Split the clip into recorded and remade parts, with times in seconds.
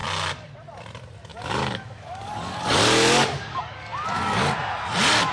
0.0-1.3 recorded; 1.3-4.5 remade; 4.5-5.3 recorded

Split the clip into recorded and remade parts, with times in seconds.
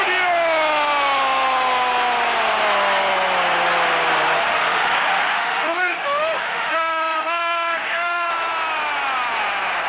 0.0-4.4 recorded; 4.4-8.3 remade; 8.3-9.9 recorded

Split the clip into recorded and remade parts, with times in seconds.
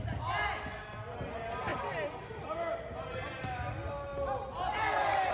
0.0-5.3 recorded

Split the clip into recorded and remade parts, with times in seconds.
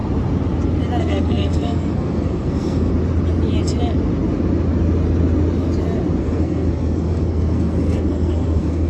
0.0-1.0 recorded; 1.0-2.9 remade; 2.9-6.2 recorded; 6.2-8.9 remade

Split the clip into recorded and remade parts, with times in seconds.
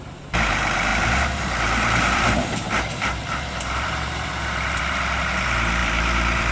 0.0-6.5 remade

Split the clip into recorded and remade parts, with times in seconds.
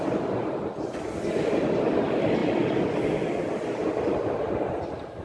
0.0-5.2 recorded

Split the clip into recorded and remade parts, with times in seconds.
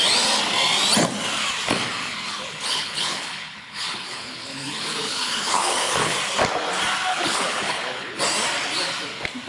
0.0-2.0 recorded; 2.0-6.2 remade; 6.2-7.1 recorded; 7.1-8.2 remade; 8.2-9.5 recorded